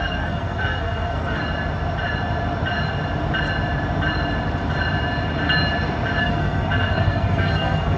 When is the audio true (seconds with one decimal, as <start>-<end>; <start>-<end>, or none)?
1.4-6.2